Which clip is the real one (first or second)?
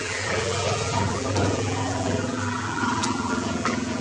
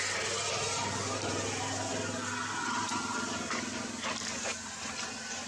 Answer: second